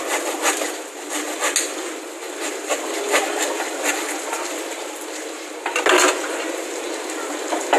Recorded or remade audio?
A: recorded